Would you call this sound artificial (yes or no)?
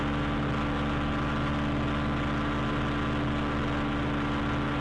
no